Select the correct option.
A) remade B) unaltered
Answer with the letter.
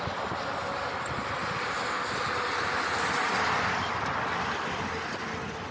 B